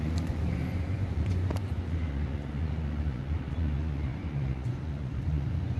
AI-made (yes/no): yes